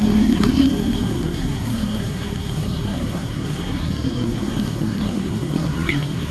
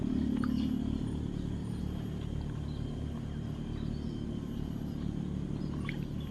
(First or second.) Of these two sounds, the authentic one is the second